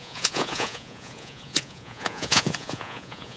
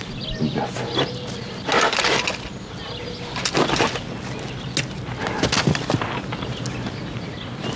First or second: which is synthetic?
first